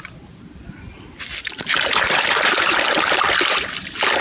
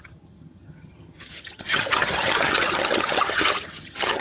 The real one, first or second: first